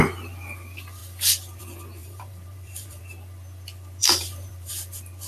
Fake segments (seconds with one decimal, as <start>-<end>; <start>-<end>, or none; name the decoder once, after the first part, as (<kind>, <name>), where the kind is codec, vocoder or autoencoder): 2.0-3.0 (vocoder, BigVGAN v2); 4.0-4.7